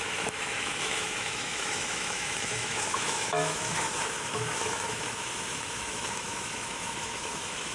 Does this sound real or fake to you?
fake